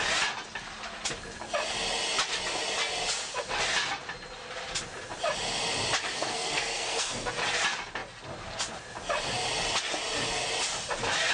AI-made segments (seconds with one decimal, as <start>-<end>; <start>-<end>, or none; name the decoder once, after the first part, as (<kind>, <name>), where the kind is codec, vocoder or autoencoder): 6.1-7.3 (codec, SNAC)